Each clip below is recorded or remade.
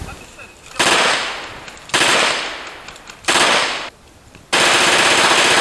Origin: recorded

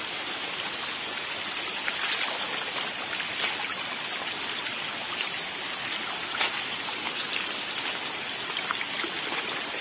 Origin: recorded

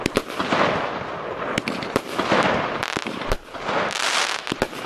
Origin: recorded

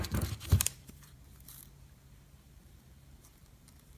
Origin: remade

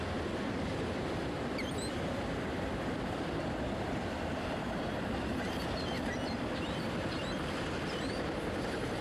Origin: remade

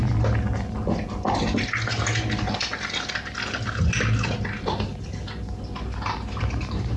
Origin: recorded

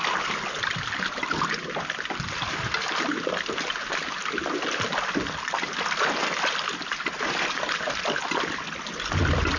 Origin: recorded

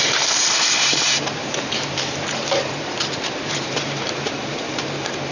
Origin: remade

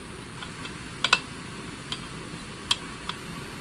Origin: recorded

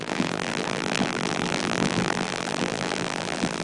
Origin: remade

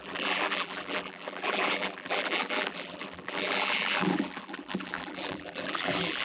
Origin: remade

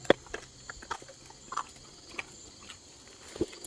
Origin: recorded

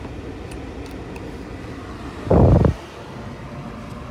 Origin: recorded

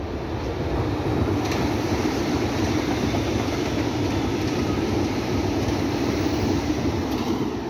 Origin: recorded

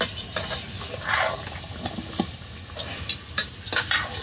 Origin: recorded